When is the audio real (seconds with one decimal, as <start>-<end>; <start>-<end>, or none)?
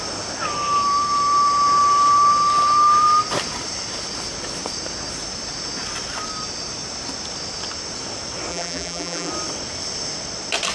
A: 0.0-8.5; 9.3-10.7